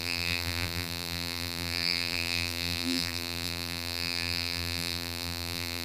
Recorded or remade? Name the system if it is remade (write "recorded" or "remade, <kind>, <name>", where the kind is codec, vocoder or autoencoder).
remade, vocoder, BigVGAN v2